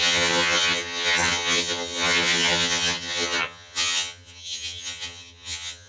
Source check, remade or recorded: remade